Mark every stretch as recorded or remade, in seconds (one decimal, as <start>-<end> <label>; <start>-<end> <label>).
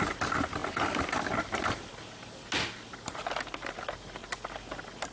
0.0-0.6 recorded; 0.6-1.9 remade; 1.9-5.1 recorded